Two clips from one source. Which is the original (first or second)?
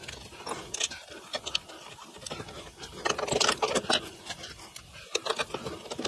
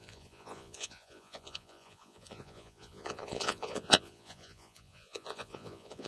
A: first